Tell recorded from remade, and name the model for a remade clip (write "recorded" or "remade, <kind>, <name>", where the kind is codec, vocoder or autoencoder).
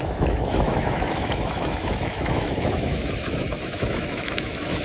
remade, autoencoder, DAC-VAE